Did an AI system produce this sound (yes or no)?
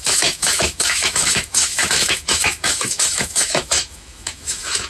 yes